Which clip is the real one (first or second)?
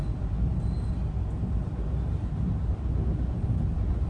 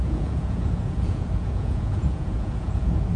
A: first